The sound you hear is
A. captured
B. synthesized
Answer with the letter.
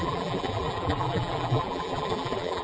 B